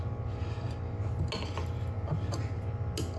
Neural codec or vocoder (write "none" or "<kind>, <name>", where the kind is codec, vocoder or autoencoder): none